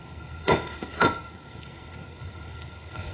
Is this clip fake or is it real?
fake